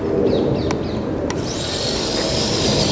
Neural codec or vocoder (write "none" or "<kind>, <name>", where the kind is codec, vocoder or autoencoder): none